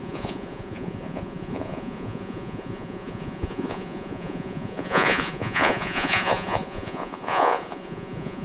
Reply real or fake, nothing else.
fake